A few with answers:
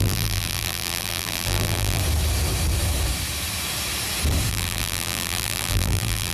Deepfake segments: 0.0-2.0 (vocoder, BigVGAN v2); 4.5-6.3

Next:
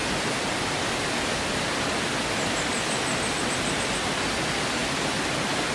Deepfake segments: none

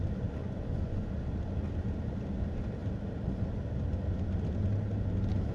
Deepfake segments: 0.4-1.1 (vocoder, Vocos)

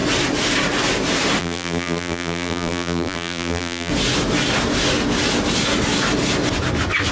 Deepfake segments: 1.4-3.9 (vocoder, BigVGAN v2)

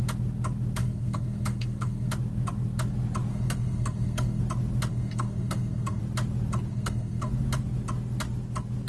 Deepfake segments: 0.8-2.1 (codec, SNAC); 3.3-4.4; 4.9-6.0; 6.7-7.3

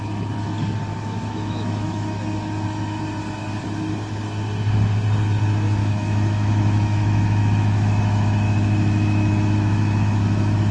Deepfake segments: 0.9-3.0 (autoencoder, DAC-VAE); 5.8-10.7

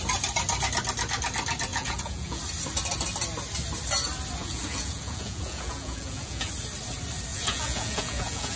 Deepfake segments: 1.7-2.4 (vocoder, Vocos); 4.4-6.5; 7.3-8.6